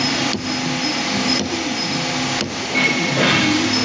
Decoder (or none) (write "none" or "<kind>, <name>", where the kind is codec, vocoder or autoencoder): none